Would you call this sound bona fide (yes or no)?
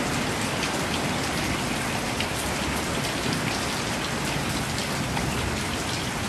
yes